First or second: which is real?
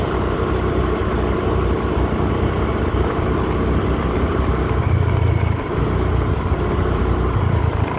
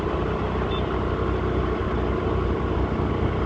second